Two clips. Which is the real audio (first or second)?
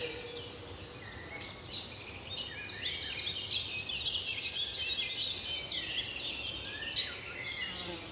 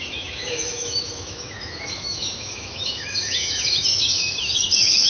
first